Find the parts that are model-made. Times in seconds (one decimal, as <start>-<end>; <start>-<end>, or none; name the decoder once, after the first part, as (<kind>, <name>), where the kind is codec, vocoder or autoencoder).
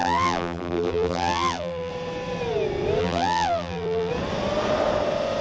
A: 0.0-1.9 (vocoder, BigVGAN v2); 3.0-4.1